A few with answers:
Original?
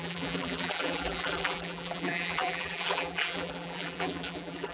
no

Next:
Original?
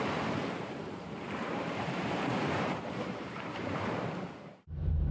no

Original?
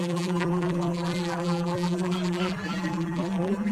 no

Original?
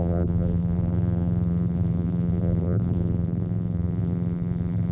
no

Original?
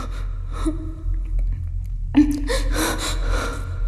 yes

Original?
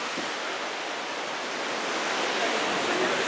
yes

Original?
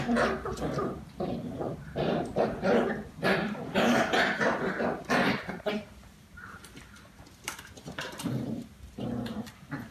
no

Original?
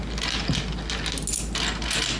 yes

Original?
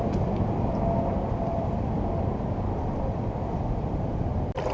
no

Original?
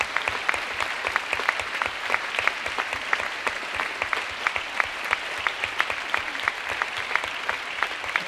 no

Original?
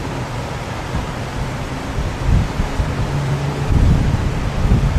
no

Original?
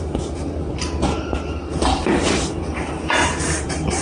no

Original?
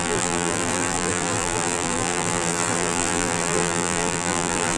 no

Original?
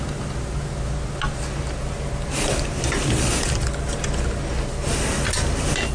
yes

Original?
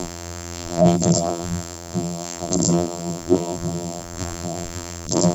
no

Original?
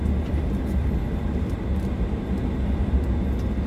yes